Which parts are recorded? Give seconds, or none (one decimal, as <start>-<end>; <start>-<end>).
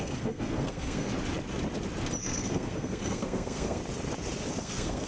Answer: 1.1-2.2; 3.8-4.6